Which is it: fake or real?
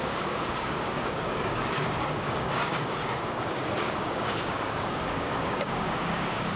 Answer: fake